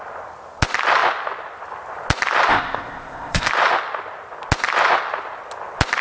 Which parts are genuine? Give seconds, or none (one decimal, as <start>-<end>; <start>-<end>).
0.0-2.5; 3.5-6.0